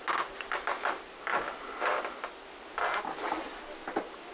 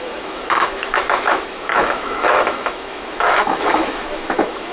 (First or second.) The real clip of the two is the first